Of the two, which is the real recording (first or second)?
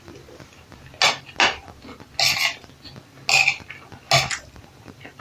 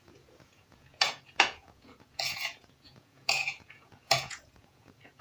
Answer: first